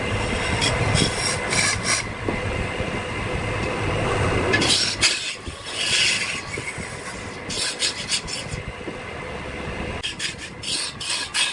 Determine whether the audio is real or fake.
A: real